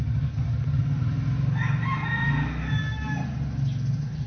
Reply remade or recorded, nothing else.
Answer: recorded